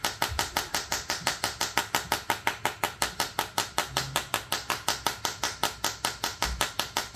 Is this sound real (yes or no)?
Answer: yes